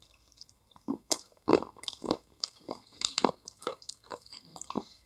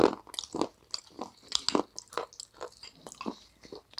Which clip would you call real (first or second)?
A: second